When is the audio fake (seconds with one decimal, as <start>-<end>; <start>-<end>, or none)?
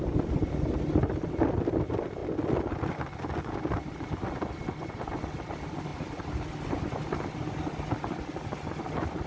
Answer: none